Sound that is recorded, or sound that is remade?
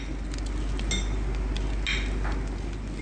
recorded